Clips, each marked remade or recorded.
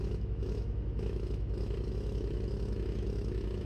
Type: remade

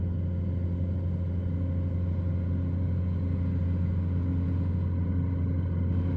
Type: recorded